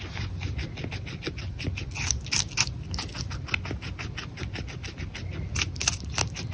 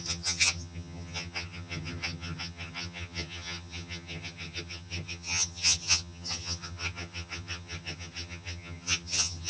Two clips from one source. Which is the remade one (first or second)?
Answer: second